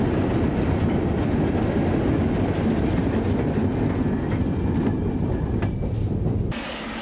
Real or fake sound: real